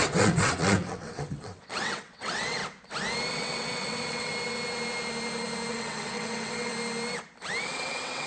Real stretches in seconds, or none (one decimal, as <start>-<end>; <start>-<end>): 2.6-3.3; 4.3-5.7; 6.7-7.6